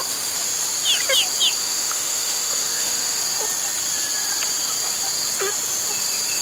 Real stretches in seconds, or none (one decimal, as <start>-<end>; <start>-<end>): 0.0-1.6; 3.2-6.4